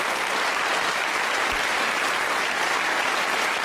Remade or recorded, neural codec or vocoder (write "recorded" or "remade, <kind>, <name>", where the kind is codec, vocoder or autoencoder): recorded